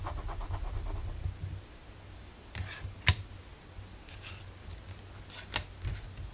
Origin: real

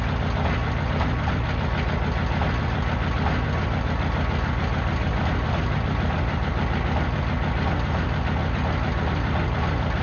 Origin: real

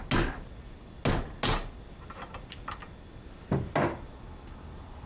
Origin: real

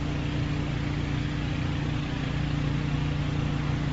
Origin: real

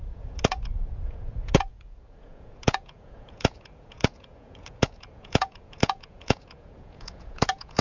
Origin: fake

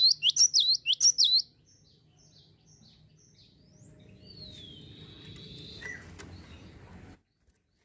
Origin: real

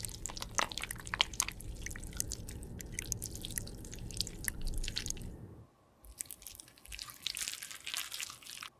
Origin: real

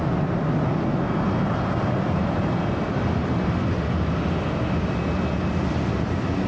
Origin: real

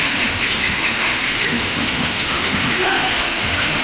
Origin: fake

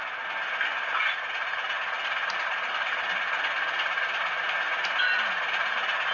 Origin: real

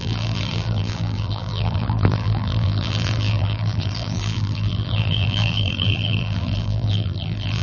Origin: fake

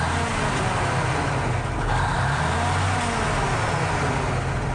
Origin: real